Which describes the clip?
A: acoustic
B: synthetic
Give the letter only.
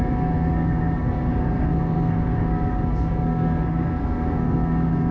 B